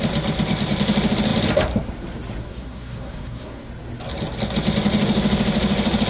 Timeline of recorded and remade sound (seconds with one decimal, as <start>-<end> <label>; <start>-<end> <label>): 0.0-2.4 recorded; 2.4-3.7 remade; 3.7-6.1 recorded